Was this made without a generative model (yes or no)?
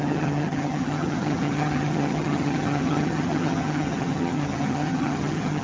no